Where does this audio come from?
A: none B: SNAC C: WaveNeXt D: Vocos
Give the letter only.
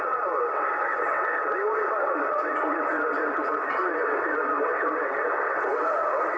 C